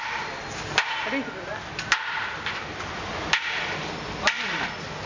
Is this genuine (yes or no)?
yes